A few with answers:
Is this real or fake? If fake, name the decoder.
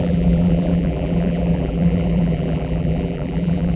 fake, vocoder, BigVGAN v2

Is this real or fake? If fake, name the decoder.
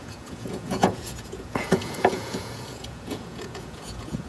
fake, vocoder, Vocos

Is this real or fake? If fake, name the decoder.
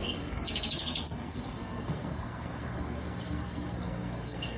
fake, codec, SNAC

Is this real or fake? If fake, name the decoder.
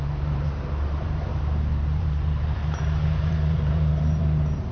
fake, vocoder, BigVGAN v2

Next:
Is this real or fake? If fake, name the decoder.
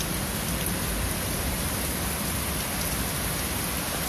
real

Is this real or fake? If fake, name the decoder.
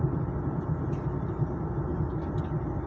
real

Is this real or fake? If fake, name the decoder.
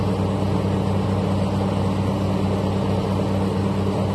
real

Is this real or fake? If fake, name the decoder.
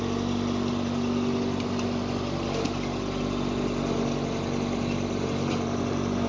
real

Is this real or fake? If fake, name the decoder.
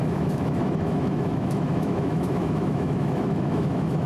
fake, autoencoder, DAC-VAE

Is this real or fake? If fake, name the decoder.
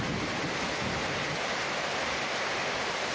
real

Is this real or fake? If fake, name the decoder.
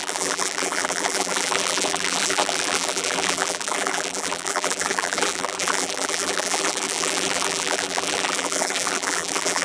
fake, vocoder, BigVGAN v2